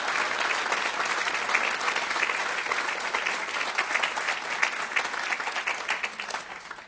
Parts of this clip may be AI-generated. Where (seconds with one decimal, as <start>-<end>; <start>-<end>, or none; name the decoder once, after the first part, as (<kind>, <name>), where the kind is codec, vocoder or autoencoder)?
none